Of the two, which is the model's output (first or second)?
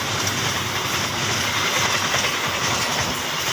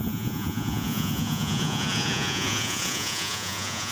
second